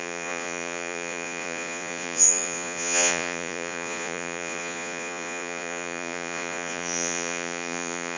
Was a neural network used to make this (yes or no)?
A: yes